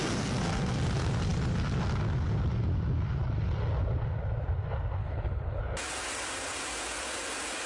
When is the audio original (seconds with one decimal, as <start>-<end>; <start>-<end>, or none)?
0.0-5.0; 5.6-7.7